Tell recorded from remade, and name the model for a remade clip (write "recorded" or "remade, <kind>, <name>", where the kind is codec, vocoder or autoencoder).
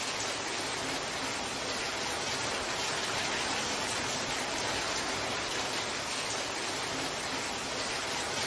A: recorded